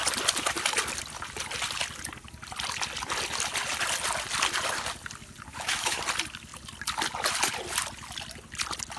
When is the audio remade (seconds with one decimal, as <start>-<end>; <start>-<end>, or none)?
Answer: 5.5-6.0